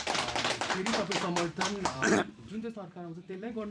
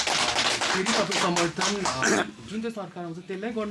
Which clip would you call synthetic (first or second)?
first